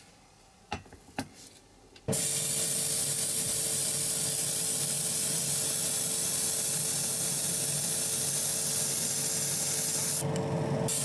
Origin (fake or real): real